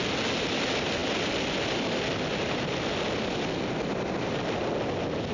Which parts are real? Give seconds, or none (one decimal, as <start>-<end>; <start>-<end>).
0.0-5.3